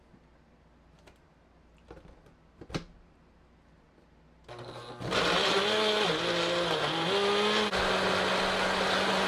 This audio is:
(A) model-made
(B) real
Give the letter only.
B